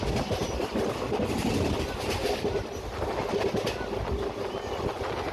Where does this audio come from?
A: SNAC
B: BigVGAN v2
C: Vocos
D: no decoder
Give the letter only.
D